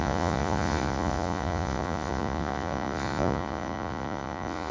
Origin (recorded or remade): remade